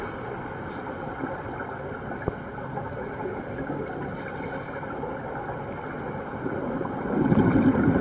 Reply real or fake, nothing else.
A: real